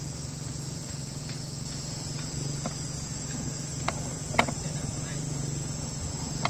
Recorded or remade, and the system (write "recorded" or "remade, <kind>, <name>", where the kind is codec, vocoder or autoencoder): remade, vocoder, Vocos